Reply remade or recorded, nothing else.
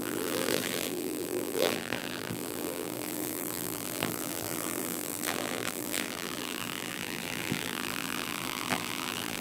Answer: remade